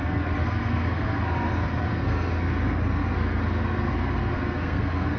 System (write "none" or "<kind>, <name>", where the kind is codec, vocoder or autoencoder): codec, SNAC